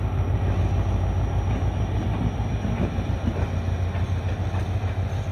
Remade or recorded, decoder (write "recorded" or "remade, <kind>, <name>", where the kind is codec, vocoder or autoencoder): recorded